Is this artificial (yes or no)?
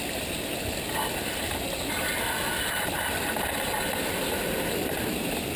no